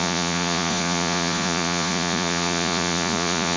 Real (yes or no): no